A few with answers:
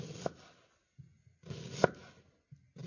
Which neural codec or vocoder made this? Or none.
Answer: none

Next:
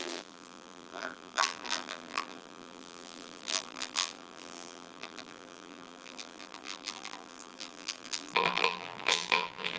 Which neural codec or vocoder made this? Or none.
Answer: vocoder, BigVGAN v2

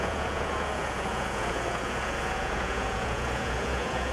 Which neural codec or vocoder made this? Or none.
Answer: vocoder, Vocos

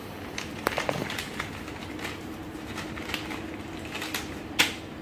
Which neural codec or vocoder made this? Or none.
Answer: none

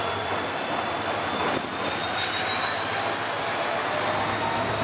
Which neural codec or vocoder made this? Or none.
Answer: none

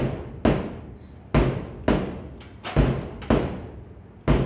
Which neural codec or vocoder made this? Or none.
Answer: none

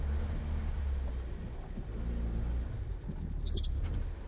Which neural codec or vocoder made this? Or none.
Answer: none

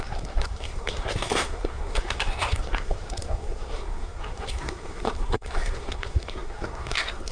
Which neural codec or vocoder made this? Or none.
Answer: codec, SNAC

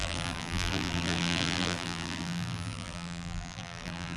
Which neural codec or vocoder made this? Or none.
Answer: vocoder, BigVGAN v2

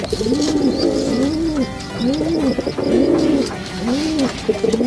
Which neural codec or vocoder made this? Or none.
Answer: none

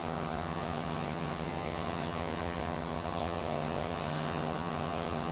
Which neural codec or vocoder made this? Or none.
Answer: vocoder, HiFi-GAN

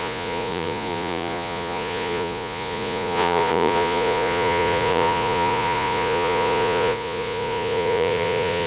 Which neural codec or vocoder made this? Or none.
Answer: vocoder, Vocos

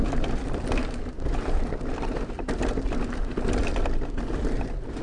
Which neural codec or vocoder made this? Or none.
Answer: none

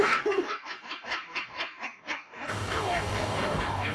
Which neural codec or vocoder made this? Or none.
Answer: codec, DAC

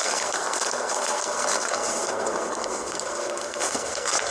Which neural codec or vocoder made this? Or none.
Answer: codec, SNAC